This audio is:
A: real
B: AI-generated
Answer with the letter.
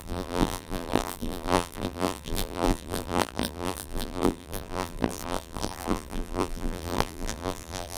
B